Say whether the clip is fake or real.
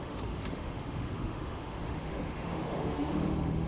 fake